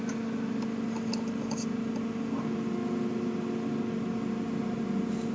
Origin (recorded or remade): recorded